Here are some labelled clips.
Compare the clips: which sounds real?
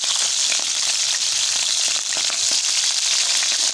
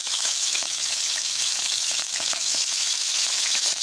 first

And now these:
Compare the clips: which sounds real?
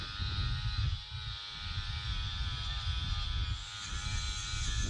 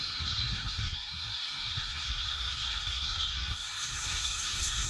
first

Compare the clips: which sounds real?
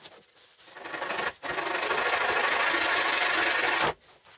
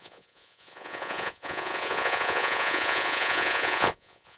first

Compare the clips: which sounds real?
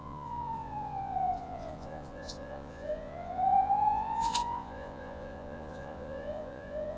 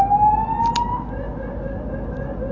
second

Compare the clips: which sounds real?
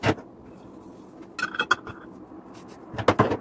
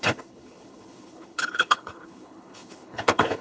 first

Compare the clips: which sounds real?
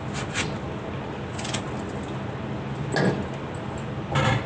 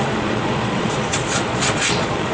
first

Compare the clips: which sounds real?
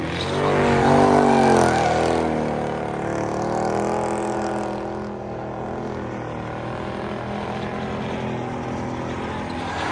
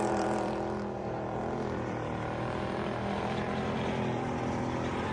first